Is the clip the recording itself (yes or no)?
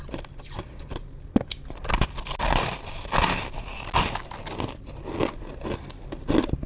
yes